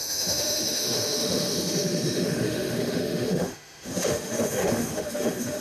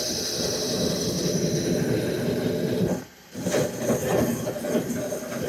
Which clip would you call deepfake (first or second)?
first